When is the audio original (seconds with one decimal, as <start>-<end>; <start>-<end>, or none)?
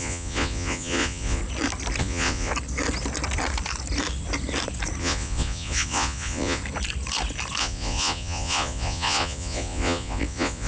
1.4-2.0; 2.5-5.0; 6.6-7.6